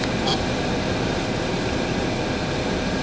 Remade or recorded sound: recorded